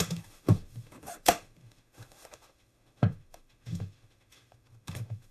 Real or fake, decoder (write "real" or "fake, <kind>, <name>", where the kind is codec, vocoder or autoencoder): fake, autoencoder, DAC-VAE